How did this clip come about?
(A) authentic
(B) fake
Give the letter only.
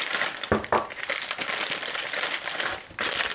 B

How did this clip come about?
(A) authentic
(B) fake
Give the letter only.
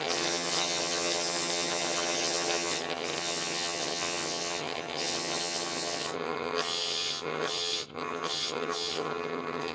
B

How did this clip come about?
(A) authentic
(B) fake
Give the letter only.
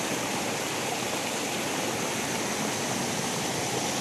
A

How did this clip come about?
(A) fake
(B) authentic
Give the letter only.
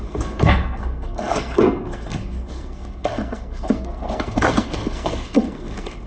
A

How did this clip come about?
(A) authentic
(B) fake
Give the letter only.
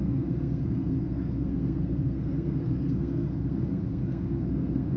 B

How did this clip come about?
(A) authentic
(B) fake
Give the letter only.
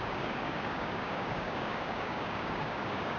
B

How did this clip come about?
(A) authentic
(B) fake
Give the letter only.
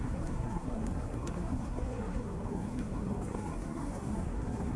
B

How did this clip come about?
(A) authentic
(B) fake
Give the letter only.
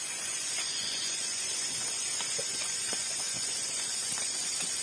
B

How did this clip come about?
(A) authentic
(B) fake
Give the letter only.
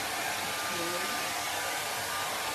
B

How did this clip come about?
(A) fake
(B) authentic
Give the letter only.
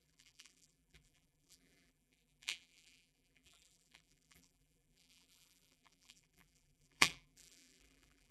A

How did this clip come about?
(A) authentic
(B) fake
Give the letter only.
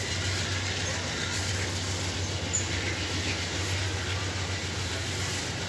A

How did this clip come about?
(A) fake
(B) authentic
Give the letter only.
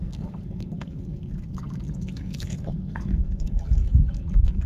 A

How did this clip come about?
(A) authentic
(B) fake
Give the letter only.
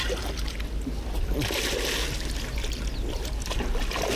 A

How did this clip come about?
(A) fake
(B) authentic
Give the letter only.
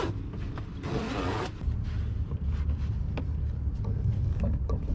B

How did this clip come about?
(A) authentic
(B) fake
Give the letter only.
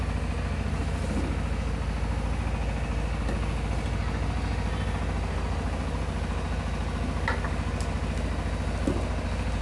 A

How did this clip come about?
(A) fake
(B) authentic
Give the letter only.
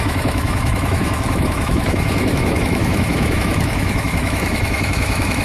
A